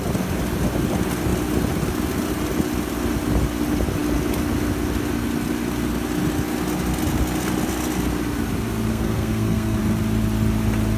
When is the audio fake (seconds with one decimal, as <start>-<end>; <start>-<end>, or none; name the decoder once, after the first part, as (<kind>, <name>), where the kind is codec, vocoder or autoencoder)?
8.9-9.8 (codec, SNAC)